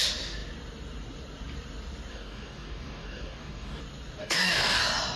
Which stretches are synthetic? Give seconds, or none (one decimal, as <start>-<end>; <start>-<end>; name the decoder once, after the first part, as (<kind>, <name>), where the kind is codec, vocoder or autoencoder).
2.1-3.8 (codec, DAC); 4.2-4.8